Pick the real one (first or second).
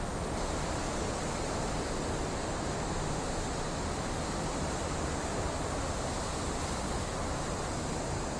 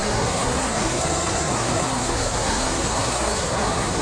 first